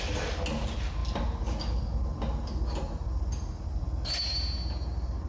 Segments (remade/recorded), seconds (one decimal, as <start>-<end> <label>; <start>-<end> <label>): 0.0-5.3 recorded